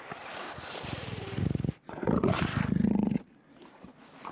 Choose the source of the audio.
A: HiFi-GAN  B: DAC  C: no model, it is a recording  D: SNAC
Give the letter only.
C